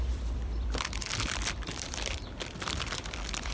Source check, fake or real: fake